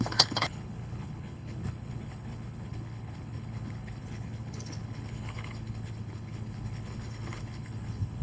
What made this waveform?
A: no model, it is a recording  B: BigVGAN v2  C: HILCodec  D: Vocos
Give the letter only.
C